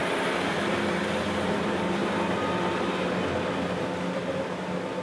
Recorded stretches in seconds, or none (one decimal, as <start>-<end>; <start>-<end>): 0.0-5.0